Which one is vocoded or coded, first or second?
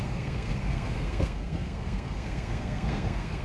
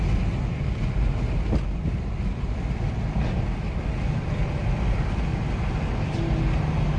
first